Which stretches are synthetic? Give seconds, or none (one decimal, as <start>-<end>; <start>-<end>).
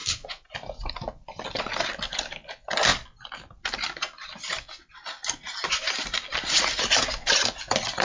none